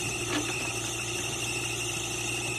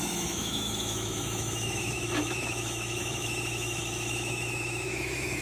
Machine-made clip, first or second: second